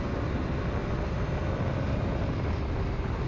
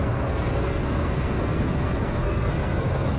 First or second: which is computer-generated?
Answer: second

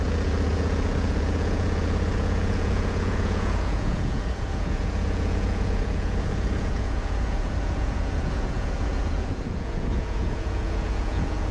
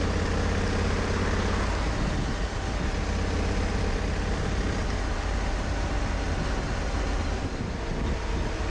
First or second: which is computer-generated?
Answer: first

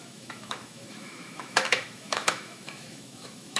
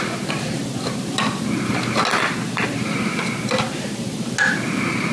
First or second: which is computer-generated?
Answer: first